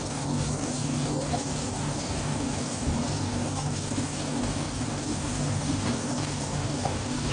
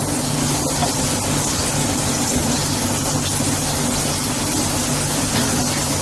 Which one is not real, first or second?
first